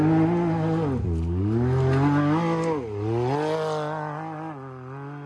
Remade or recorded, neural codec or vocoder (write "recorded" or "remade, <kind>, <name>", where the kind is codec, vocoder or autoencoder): recorded